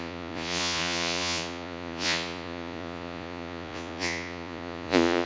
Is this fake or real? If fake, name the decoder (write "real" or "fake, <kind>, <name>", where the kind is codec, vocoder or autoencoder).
fake, vocoder, Vocos